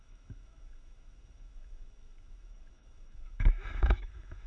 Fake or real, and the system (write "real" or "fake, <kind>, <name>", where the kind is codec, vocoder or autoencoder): fake, autoencoder, DAC-VAE